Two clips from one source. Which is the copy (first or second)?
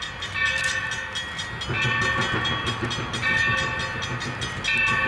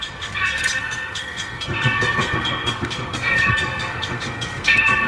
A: second